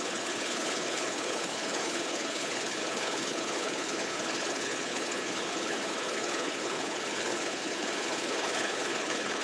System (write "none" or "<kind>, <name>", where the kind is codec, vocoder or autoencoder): codec, HILCodec